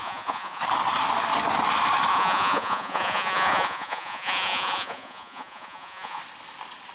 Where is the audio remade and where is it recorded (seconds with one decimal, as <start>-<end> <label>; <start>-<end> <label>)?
0.0-0.6 remade; 0.6-2.1 recorded; 2.1-6.2 remade; 6.2-6.9 recorded